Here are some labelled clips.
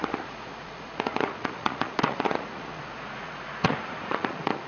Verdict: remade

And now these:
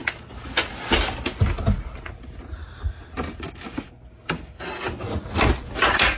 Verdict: recorded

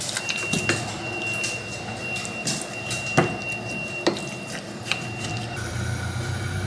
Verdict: recorded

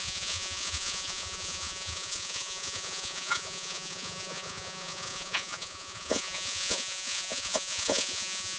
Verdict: remade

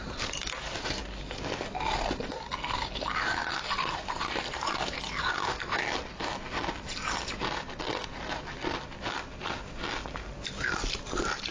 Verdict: recorded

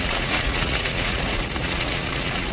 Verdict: remade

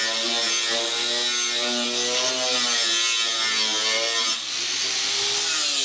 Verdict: recorded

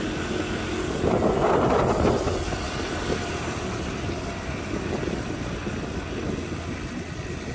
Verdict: recorded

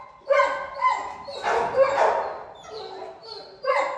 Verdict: recorded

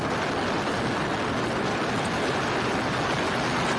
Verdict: recorded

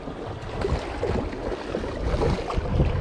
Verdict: recorded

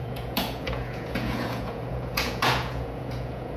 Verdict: remade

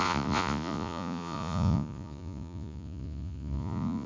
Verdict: remade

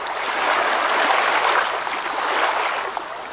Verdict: recorded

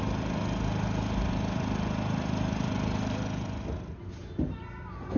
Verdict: recorded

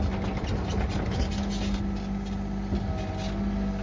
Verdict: recorded